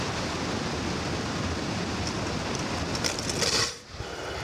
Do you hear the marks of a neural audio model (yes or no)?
no